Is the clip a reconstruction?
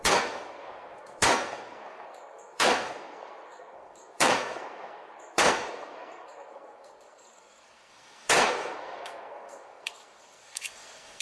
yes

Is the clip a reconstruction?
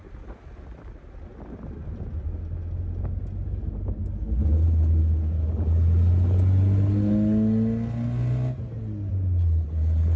no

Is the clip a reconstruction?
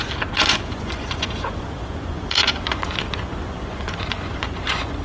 yes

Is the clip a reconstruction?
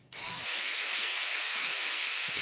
yes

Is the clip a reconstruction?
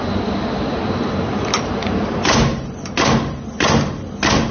no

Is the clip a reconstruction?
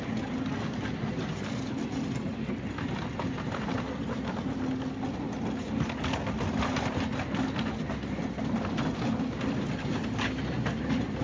no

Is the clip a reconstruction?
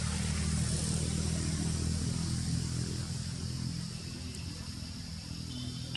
no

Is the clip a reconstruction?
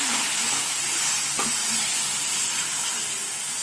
no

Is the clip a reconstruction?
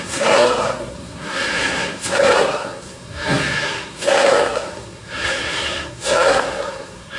yes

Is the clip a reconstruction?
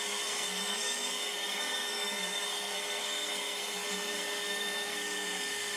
yes